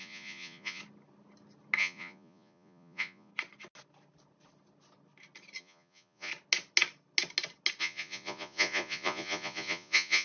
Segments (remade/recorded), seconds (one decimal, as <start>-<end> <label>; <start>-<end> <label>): 0.0-0.8 remade; 0.8-1.8 recorded; 1.8-3.3 remade; 3.3-5.6 recorded; 5.6-6.3 remade; 6.3-7.8 recorded; 7.8-10.2 remade